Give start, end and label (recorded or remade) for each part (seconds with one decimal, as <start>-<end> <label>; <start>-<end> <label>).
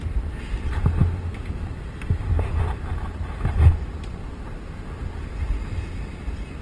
0.0-6.6 recorded